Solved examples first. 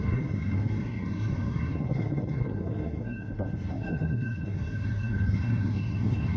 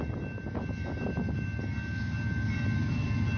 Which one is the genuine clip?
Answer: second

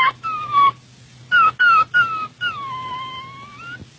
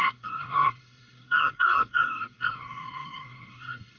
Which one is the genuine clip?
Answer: first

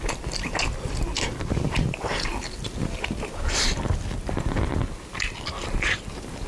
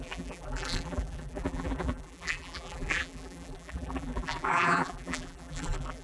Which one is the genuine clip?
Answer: first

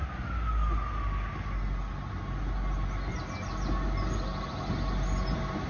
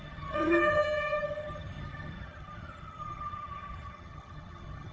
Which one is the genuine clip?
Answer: first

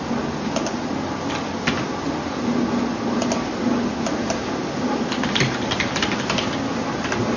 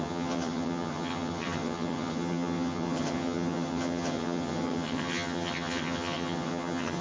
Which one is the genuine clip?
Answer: first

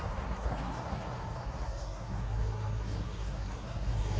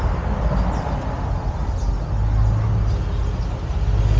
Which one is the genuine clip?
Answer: second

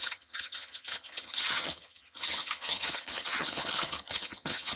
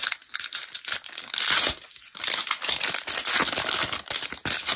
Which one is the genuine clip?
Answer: second